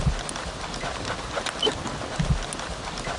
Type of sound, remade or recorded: recorded